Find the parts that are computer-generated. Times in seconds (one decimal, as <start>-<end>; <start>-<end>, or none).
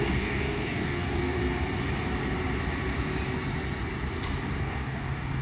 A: 0.0-1.4; 4.6-5.4